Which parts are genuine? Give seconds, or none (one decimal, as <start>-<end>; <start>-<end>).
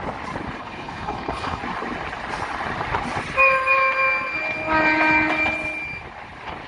0.0-0.6; 1.6-6.7